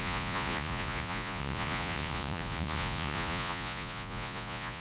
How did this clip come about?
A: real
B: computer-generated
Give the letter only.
B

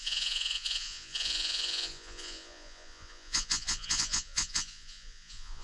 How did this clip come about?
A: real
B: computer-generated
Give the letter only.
B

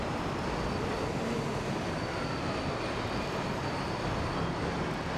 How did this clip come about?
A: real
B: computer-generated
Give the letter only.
A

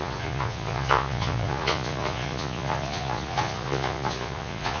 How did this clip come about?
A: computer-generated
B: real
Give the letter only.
A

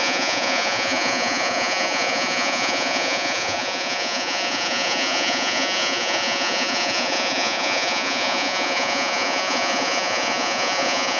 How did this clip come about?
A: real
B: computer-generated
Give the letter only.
B